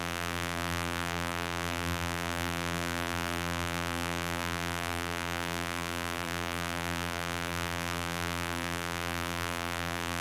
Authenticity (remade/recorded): remade